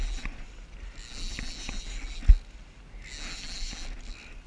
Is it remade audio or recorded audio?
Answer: recorded